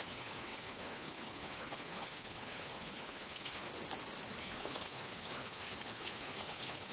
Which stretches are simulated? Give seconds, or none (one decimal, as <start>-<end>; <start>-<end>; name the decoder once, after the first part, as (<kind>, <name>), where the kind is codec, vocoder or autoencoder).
0.0-3.7 (codec, HILCodec); 4.4-6.9